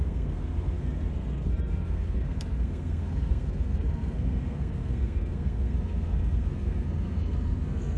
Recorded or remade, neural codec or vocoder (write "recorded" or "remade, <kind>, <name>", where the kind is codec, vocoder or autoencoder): remade, codec, SNAC